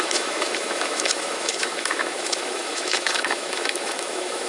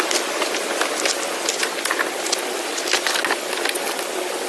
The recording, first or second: second